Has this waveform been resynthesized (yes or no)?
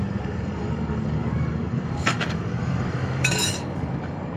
yes